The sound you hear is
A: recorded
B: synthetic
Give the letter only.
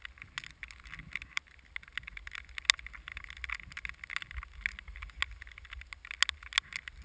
A